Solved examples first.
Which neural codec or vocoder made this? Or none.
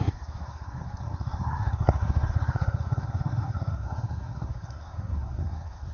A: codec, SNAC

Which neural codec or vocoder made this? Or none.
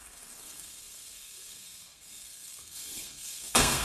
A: codec, SNAC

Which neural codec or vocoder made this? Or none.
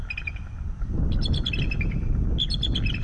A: none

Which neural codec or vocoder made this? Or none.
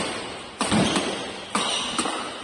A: none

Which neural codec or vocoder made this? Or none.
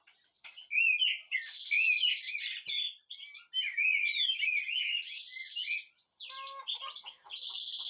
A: none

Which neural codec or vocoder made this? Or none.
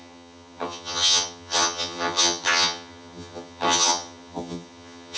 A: vocoder, HiFi-GAN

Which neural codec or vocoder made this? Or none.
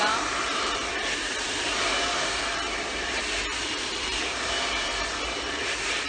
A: vocoder, BigVGAN v2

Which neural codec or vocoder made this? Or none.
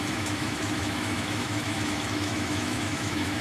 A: autoencoder, DAC-VAE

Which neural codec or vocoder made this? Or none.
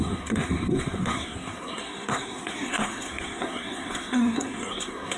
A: codec, SNAC